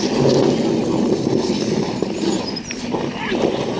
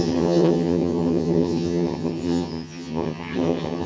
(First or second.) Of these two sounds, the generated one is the second